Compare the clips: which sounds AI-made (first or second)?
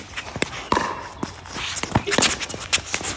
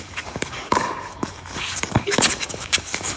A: second